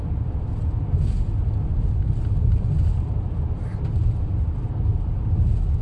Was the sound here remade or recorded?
recorded